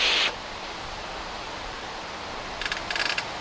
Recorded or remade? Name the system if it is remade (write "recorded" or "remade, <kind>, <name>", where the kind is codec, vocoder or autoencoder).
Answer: recorded